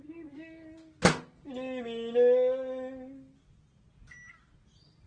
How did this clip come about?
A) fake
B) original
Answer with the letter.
B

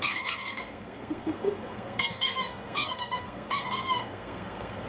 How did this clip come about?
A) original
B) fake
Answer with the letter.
B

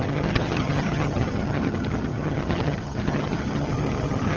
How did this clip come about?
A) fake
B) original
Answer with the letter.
A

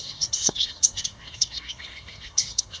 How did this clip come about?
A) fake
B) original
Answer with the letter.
A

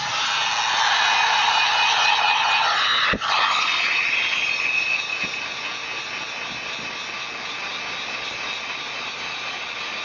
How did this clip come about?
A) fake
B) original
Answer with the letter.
B